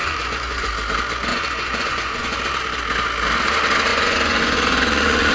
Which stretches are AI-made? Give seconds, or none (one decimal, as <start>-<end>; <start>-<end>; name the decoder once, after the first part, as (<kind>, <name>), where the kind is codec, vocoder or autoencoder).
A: 0.0-0.7 (vocoder, Vocos); 1.3-2.4; 3.9-5.3